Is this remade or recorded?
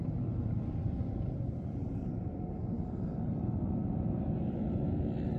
recorded